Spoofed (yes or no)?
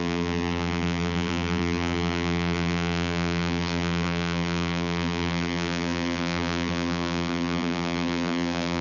yes